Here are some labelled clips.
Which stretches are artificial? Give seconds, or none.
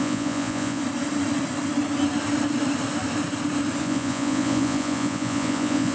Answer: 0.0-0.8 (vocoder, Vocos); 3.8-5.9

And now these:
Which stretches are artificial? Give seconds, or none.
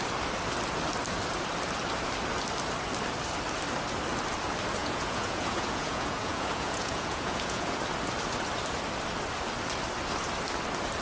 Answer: 4.8-7.8 (vocoder, Vocos)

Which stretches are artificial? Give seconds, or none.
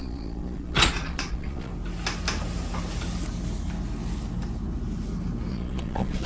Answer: 0.0-1.7 (vocoder, Vocos); 5.5-6.3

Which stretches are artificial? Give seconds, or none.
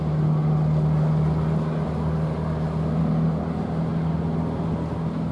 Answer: none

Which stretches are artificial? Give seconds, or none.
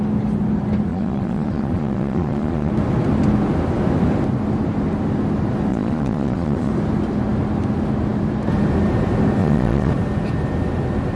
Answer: 0.9-2.7 (vocoder, Vocos); 5.7-6.7; 9.4-9.9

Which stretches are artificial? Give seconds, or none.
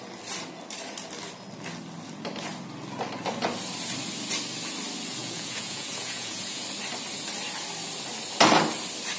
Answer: 5.2-6.6 (vocoder, Vocos)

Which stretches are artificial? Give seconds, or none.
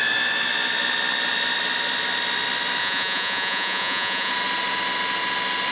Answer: 2.8-4.3 (vocoder, Vocos)